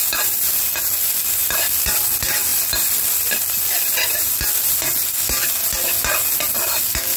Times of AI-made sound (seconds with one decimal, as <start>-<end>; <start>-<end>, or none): 1.4-2.1; 2.5-3.1; 4.2-4.7